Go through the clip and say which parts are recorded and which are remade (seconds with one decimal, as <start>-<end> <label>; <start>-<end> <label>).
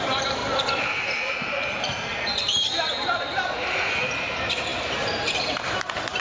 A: 0.0-6.2 remade